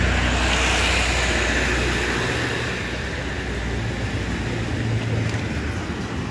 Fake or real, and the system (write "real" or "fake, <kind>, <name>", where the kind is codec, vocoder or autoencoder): real